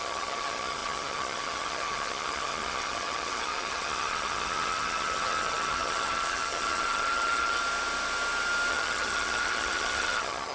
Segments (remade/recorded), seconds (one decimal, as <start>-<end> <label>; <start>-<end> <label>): 0.0-7.6 remade; 7.6-8.7 recorded; 8.7-10.5 remade